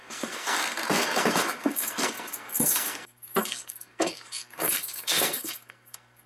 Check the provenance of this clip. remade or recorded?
remade